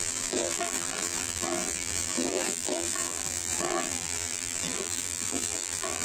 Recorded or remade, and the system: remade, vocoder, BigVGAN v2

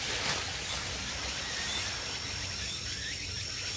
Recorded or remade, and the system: recorded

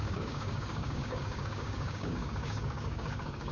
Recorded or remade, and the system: remade, codec, DAC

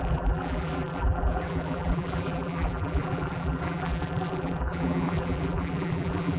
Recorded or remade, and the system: remade, vocoder, BigVGAN v2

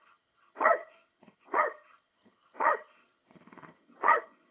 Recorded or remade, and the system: remade, vocoder, HiFi-GAN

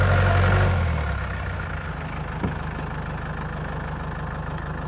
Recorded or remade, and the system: recorded